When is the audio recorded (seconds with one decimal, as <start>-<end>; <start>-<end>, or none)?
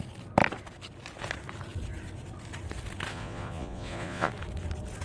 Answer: 0.0-3.1; 4.3-5.0